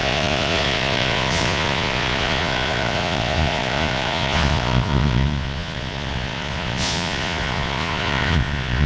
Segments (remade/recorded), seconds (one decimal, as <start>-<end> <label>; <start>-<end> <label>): 0.0-8.9 remade